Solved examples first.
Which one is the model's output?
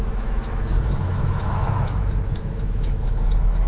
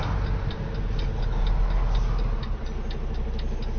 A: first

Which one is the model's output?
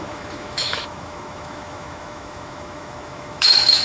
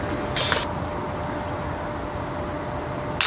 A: first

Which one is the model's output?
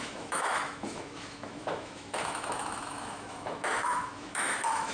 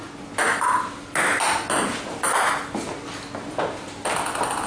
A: first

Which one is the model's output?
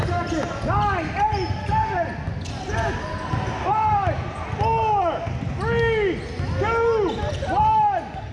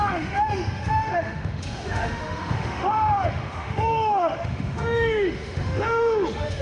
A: second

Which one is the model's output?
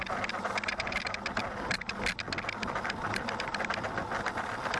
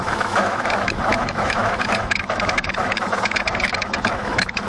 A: second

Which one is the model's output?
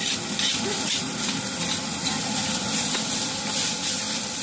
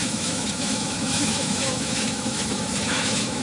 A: second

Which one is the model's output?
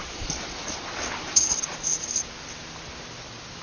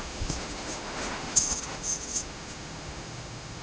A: second